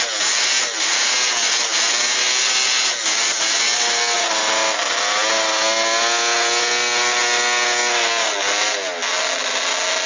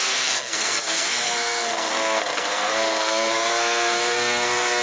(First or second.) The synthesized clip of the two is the second